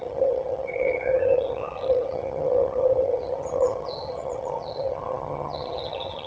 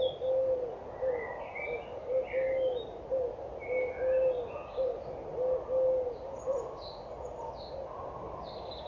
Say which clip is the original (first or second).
second